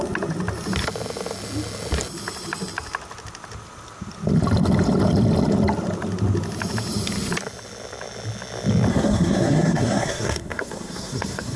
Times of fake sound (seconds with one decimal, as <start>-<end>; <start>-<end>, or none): 8.9-11.6

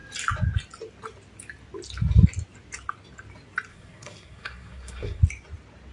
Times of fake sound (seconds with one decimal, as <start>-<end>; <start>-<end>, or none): 3.7-5.2

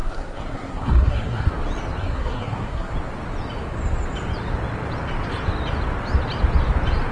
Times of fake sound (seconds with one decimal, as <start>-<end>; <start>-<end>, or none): 0.0-1.5; 2.0-2.9

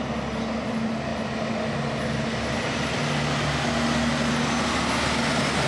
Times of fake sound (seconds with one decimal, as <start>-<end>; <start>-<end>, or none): none

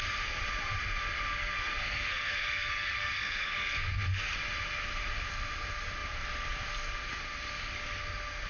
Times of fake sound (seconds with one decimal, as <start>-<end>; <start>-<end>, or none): 1.3-4.3